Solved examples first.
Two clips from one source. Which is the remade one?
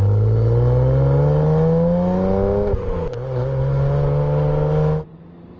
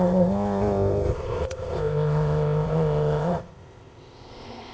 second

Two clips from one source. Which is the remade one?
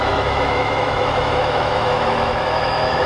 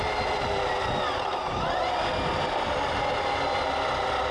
first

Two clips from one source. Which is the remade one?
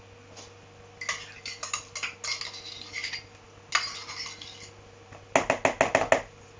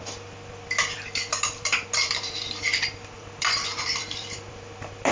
second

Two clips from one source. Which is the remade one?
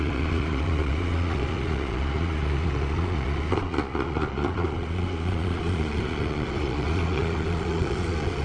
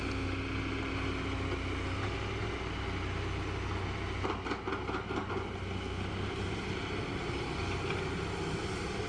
first